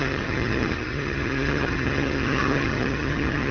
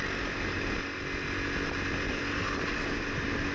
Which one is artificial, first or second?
first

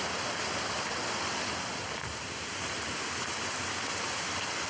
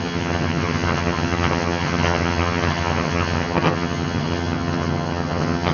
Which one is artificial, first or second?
second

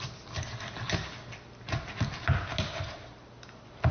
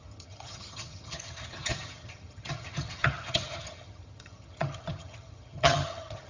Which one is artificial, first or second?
second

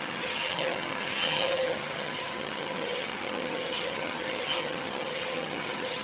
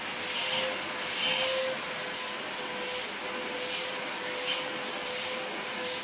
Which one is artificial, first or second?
first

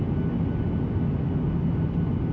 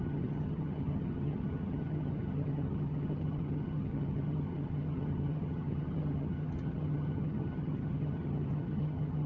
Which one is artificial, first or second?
second